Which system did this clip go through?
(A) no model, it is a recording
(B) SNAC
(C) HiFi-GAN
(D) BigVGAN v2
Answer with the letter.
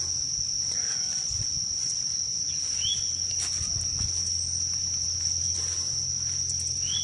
A